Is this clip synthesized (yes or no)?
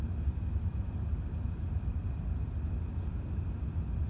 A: no